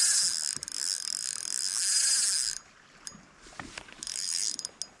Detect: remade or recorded recorded